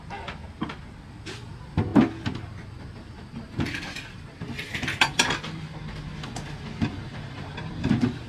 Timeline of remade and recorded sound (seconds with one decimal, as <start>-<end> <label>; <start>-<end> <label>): 0.0-8.3 recorded